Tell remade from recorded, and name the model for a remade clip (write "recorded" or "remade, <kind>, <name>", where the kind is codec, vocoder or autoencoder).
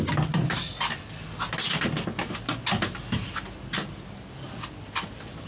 recorded